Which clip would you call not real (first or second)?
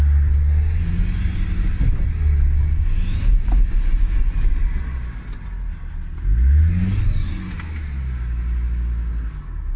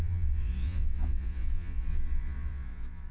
second